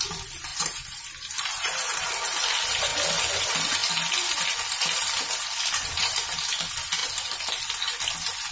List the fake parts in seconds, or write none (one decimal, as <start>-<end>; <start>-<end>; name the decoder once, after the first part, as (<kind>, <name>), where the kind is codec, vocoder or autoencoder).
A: 0.5-2.0 (vocoder, BigVGAN v2); 7.0-7.6